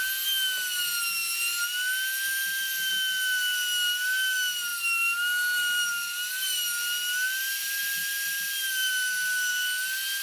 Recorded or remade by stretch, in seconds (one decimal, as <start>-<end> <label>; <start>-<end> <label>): 0.0-10.2 recorded